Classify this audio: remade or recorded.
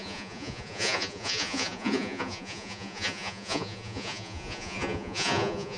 remade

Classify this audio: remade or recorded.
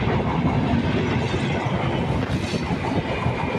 recorded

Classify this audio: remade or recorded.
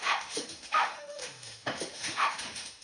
remade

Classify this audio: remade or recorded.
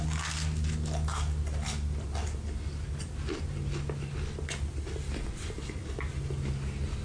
recorded